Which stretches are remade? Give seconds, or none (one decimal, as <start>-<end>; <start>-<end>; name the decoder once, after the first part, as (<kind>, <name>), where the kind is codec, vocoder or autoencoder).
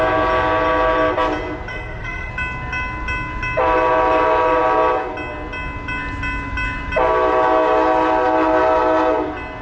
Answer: 1.7-2.3 (codec, SNAC)